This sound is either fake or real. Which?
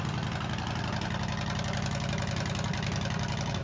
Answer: real